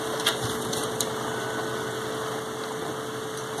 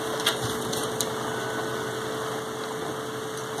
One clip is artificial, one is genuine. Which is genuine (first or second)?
second